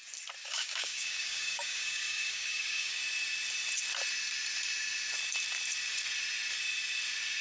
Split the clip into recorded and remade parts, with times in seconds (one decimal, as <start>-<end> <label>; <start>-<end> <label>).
0.0-0.4 recorded; 0.4-3.0 remade; 3.0-7.4 recorded